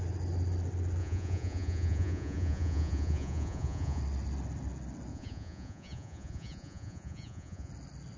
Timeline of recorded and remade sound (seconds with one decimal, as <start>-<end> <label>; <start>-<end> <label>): 0.0-1.0 recorded; 1.0-4.0 remade; 4.0-5.1 recorded; 5.1-7.7 remade; 7.7-8.2 recorded